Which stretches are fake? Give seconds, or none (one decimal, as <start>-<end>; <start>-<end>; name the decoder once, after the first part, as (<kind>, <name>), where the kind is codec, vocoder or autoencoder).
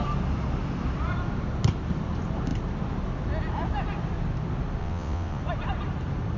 4.8-5.4 (vocoder, WaveNeXt)